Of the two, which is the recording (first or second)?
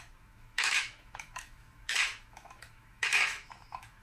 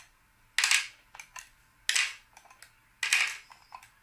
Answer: second